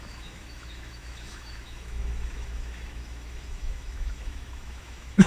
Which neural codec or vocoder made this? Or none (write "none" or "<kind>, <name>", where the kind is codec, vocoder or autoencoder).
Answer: autoencoder, DAC-VAE